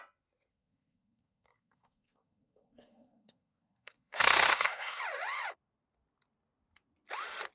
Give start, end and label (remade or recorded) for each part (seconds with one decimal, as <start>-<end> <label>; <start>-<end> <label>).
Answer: 0.0-0.5 recorded; 0.5-5.0 remade; 5.0-7.5 recorded